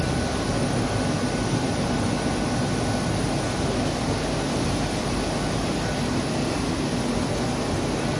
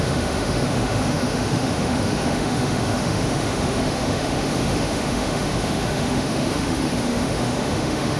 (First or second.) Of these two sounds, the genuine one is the first